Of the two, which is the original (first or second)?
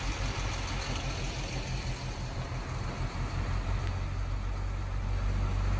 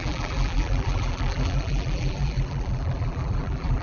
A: first